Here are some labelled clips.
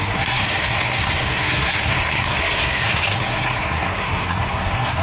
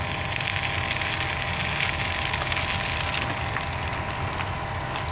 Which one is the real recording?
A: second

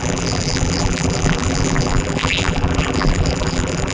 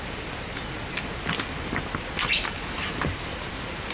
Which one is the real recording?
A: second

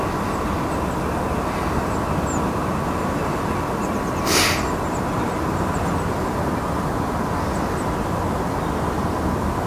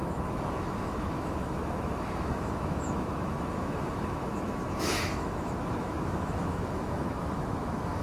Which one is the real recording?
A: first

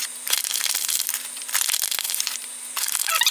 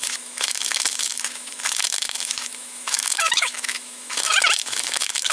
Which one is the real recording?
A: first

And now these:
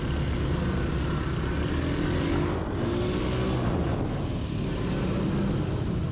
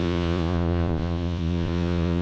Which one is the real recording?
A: first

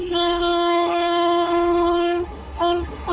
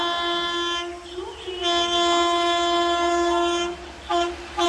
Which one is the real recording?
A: second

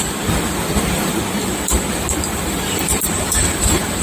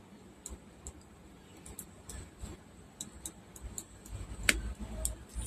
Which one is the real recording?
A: second